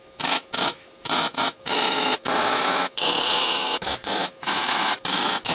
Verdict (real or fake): fake